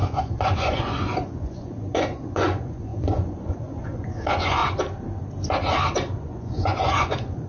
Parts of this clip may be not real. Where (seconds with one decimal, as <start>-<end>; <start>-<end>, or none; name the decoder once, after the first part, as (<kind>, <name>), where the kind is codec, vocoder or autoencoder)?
0.0-4.6 (vocoder, Vocos); 6.2-7.5